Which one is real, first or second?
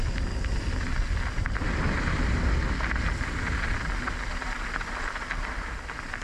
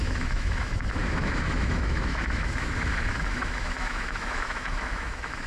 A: first